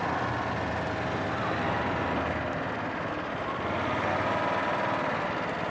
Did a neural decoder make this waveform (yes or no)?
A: no